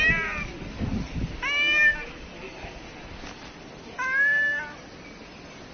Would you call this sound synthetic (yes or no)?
no